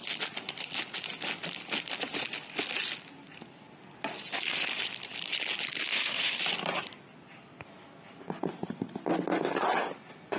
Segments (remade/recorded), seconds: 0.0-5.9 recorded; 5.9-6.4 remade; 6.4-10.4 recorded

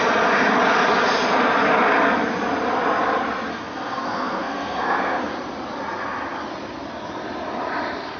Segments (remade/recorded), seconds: 0.0-3.5 recorded; 3.5-5.3 remade; 5.3-8.2 recorded